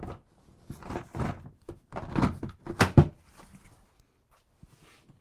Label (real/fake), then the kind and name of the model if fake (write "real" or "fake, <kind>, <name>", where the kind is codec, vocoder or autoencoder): real